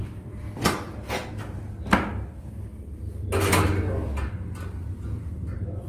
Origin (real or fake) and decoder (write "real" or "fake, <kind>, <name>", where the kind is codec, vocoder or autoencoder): real